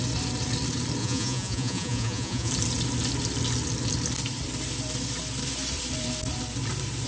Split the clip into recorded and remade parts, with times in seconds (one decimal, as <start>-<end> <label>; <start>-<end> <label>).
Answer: 0.0-1.0 recorded; 1.0-2.5 remade; 2.5-7.1 recorded